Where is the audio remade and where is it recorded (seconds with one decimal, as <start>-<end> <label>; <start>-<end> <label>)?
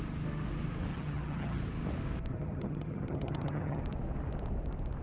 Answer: 0.0-0.9 recorded; 0.9-1.6 remade; 1.6-2.3 recorded; 2.3-3.8 remade; 3.8-5.0 recorded